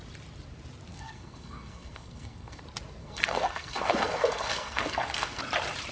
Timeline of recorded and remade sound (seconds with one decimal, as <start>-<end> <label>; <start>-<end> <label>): 0.0-0.9 recorded; 0.9-2.6 remade; 2.6-3.0 recorded; 3.0-5.4 remade; 5.4-5.9 recorded